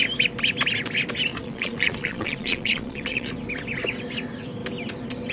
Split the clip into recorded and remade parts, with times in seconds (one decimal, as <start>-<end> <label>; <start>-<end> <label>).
0.0-1.3 recorded; 1.3-3.3 remade; 3.3-5.3 recorded